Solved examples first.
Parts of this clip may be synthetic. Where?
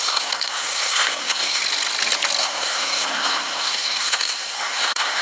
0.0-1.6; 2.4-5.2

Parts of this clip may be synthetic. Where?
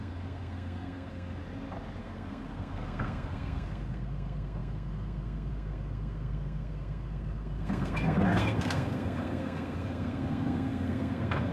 0.0-1.4; 2.0-11.5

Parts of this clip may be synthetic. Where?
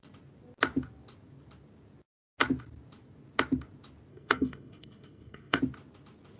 4.1-5.6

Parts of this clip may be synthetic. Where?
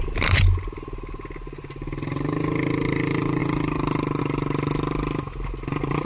none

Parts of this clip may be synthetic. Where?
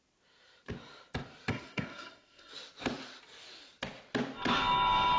1.5-2.5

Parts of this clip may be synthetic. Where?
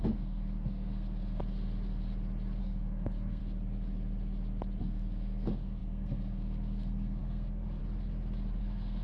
0.0-1.4; 2.6-3.4; 4.8-7.8; 8.6-9.0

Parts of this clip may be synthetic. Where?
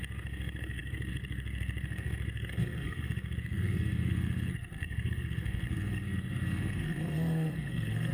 0.0-8.1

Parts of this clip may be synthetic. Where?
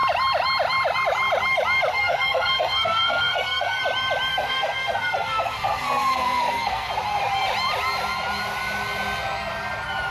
1.9-3.8; 4.3-6.9